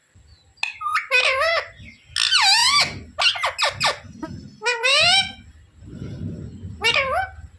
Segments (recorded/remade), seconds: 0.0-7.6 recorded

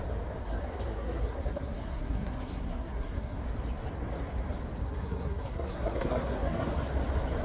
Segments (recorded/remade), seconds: 0.0-0.4 recorded; 0.4-3.4 remade; 3.4-4.8 recorded; 4.8-6.7 remade; 6.7-7.4 recorded

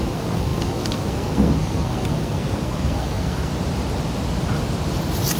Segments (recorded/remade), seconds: 0.0-3.5 remade; 3.5-5.4 recorded

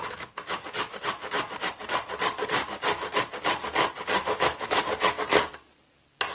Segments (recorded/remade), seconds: 0.0-4.2 recorded; 4.2-4.8 remade; 4.8-6.3 recorded

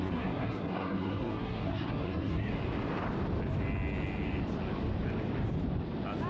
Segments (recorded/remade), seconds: 0.0-2.5 remade; 2.5-6.3 recorded

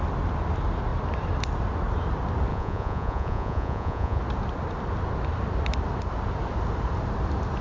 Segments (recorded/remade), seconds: 0.0-2.5 recorded; 2.5-4.2 remade; 4.2-7.6 recorded

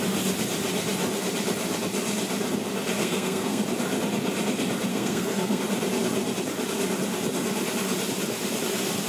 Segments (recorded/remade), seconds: 0.0-3.0 recorded; 3.0-3.6 remade; 3.6-4.9 recorded; 4.9-5.6 remade; 5.6-9.1 recorded

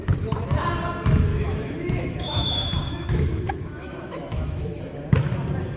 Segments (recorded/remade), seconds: 0.0-1.3 recorded; 1.3-4.8 remade; 4.8-5.8 recorded